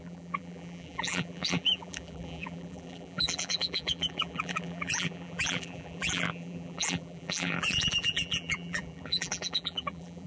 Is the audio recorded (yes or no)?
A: no